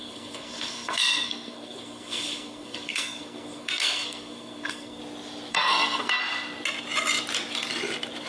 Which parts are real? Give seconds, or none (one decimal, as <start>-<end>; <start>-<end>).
5.0-5.5; 6.2-8.3